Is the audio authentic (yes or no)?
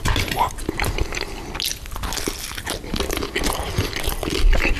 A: yes